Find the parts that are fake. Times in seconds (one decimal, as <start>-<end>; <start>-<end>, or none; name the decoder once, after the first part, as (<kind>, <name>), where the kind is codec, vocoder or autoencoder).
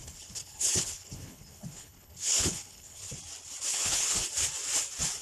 0.0-3.1 (codec, HILCodec); 3.7-4.3